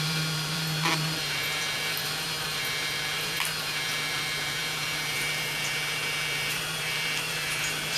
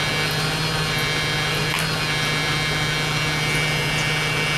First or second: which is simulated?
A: first